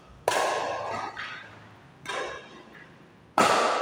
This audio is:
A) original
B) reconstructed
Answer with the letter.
A